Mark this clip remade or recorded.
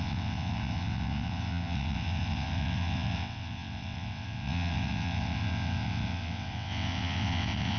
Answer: remade